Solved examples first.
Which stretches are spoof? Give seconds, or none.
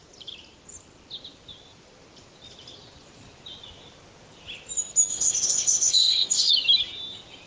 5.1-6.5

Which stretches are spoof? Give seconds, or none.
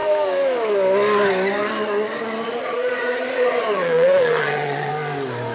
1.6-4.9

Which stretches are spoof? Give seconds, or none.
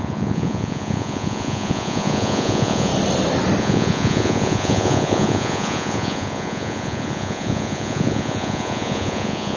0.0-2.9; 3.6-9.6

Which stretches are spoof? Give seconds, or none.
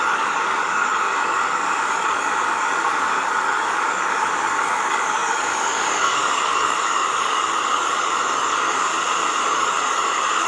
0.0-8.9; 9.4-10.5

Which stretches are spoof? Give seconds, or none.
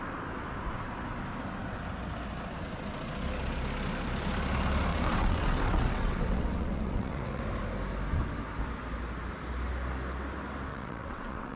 4.9-7.4; 10.7-11.6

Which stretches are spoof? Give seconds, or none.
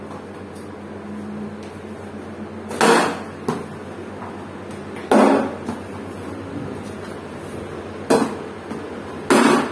none